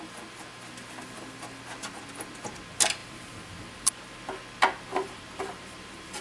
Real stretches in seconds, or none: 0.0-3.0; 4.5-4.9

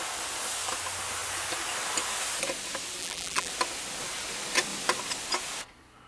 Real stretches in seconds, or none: 0.0-3.0; 3.5-6.1

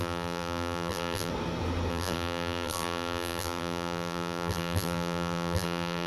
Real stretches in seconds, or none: 1.3-1.9

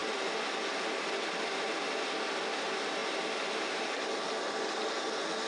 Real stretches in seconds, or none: 0.0-5.5

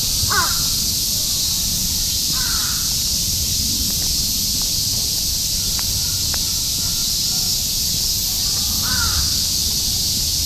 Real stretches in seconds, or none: 0.6-1.8; 3.1-7.0; 8.1-9.6